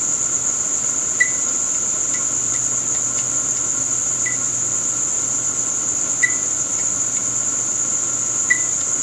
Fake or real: real